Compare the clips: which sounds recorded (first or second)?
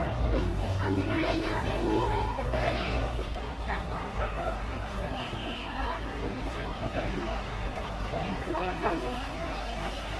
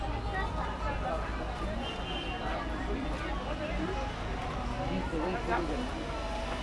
second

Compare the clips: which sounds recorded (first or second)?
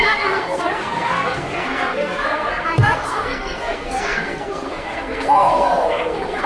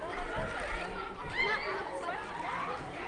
second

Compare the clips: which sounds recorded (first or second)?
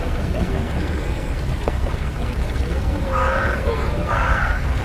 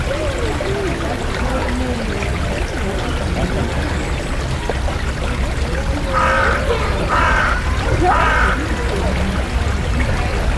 second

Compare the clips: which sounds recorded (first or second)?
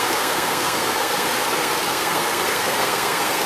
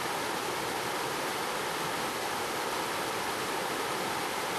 second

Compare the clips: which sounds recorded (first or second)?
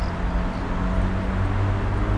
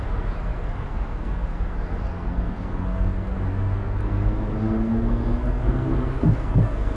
first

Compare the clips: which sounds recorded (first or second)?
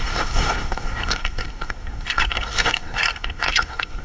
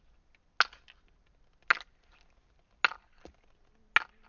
second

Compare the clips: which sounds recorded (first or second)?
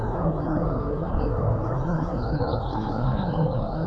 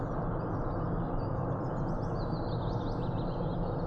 second